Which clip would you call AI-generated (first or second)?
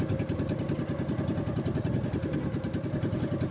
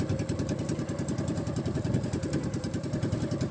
second